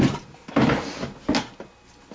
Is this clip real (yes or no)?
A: yes